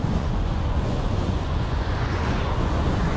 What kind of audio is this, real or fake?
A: fake